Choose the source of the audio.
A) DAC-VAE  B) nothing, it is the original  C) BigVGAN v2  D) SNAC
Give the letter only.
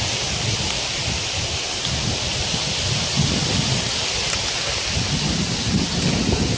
B